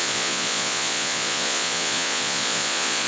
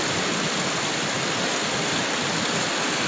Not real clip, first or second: first